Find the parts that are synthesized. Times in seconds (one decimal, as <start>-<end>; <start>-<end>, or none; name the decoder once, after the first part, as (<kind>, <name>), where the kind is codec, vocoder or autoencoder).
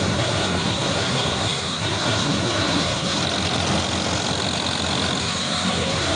0.0-3.2 (codec, SNAC); 5.2-6.2